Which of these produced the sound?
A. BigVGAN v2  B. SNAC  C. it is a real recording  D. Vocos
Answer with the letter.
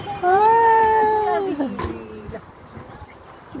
A